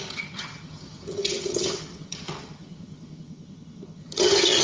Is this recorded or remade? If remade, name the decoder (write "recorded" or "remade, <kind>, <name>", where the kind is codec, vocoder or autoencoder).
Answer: remade, vocoder, HiFi-GAN